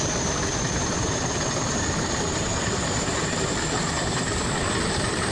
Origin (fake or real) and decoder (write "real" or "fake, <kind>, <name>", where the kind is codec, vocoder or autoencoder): fake, vocoder, BigVGAN v2